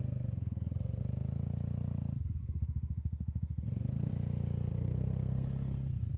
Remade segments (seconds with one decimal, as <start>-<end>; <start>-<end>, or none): 0.0-1.0; 2.4-4.1; 4.7-6.2